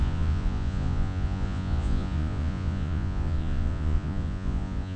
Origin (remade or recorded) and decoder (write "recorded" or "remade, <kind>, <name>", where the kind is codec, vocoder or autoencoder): remade, vocoder, Vocos